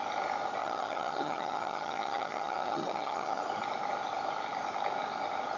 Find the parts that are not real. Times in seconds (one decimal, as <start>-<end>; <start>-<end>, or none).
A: 0.6-3.4